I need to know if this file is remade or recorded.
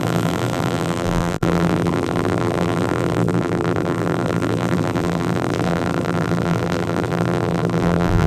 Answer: remade